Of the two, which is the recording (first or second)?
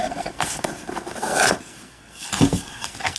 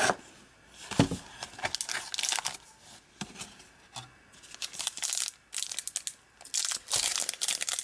second